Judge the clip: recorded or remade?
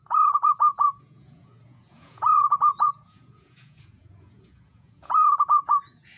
remade